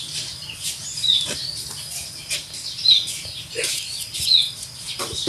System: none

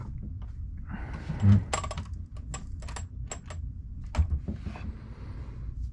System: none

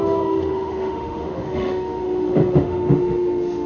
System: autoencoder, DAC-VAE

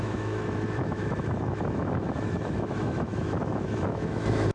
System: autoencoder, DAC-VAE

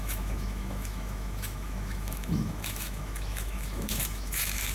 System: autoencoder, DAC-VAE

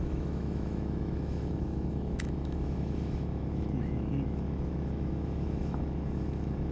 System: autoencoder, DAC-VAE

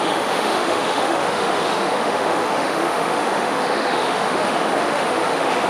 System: autoencoder, DAC-VAE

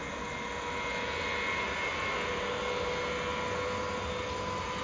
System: none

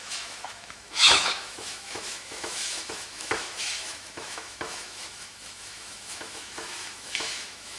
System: autoencoder, DAC-VAE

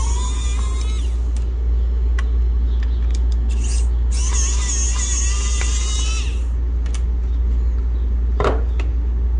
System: none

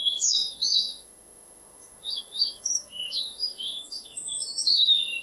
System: autoencoder, DAC-VAE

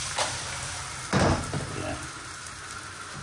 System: none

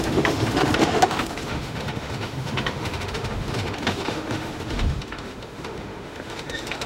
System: autoencoder, DAC-VAE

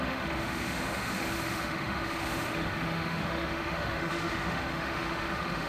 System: autoencoder, DAC-VAE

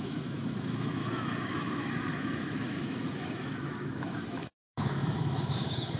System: autoencoder, DAC-VAE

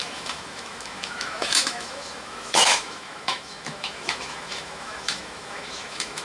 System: autoencoder, DAC-VAE